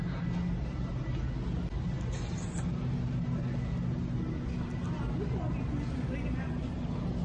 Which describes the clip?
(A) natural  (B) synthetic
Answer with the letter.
A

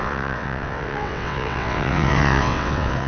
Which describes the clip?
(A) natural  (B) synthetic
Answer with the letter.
B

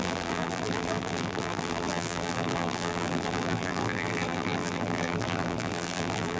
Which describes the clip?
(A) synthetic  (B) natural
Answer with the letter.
A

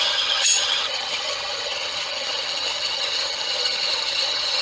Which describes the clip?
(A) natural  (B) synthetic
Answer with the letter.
B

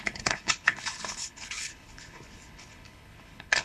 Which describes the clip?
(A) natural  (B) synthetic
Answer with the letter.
B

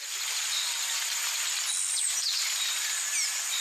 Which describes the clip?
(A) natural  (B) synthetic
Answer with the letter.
A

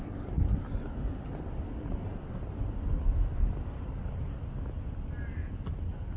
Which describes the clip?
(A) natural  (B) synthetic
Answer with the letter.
A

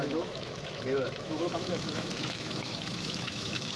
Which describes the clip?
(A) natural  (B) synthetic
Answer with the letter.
B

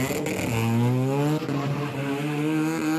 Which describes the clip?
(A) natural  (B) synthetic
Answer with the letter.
A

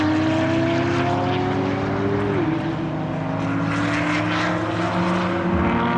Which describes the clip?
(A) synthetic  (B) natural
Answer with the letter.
B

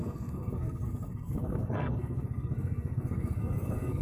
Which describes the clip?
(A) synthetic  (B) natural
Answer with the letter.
A